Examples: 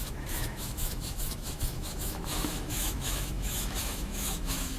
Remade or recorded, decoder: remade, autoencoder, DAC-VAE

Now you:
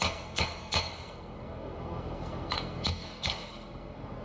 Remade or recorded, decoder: remade, codec, SNAC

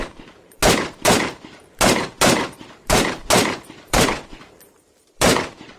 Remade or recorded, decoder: remade, vocoder, BigVGAN v2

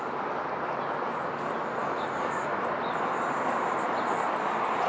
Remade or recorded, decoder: recorded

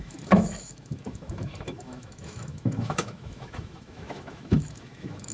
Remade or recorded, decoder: remade, autoencoder, DAC-VAE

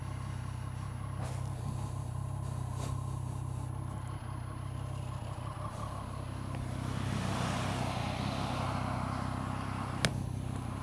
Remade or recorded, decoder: recorded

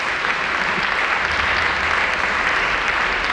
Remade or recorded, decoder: recorded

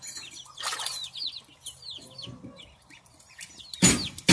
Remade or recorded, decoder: recorded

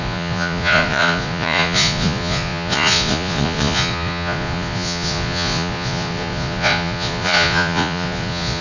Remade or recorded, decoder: remade, vocoder, Vocos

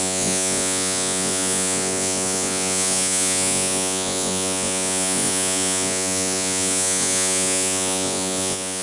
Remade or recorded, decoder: remade, vocoder, Vocos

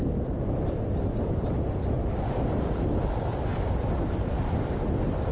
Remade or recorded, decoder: remade, vocoder, BigVGAN v2